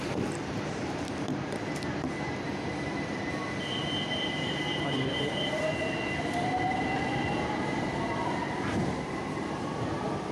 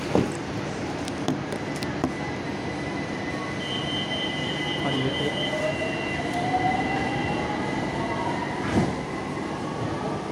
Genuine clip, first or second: second